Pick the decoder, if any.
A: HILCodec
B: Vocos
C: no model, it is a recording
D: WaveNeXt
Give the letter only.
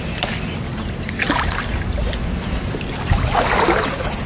C